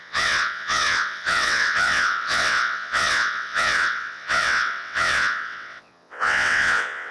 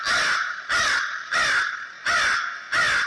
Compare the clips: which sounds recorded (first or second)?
second